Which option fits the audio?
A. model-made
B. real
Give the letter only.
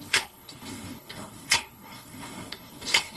A